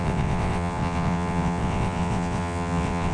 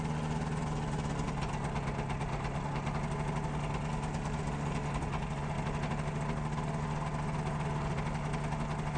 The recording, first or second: second